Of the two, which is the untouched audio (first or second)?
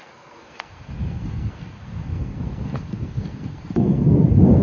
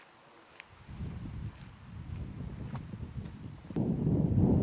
second